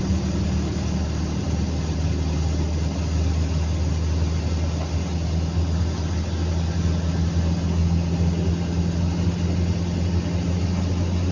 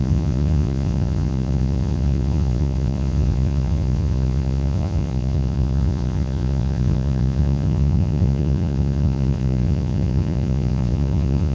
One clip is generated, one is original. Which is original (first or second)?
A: first